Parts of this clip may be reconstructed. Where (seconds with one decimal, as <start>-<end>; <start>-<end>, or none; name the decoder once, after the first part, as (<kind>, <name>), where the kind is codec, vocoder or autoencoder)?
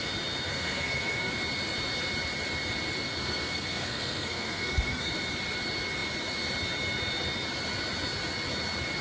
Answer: 0.5-1.3 (codec, SNAC); 3.2-5.1